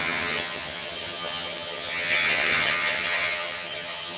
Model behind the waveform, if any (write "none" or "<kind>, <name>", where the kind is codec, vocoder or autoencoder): vocoder, HiFi-GAN